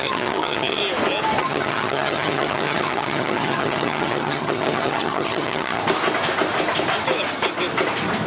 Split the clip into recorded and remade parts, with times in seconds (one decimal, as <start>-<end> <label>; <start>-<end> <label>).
0.0-0.8 remade; 0.8-1.4 recorded; 1.4-5.8 remade; 5.8-8.3 recorded

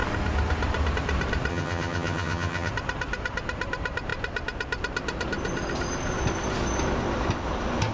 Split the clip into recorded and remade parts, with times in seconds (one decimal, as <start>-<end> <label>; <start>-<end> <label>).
0.0-1.5 recorded; 1.5-2.7 remade; 2.7-7.9 recorded

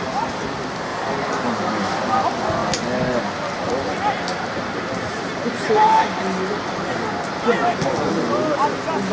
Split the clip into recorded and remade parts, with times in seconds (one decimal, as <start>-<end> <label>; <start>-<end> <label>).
0.0-9.1 recorded

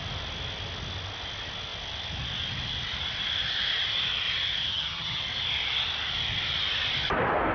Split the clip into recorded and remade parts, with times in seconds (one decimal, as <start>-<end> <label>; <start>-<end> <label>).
0.0-4.7 recorded; 4.7-5.2 remade; 5.2-7.5 recorded